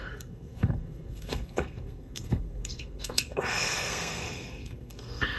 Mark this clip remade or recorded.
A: remade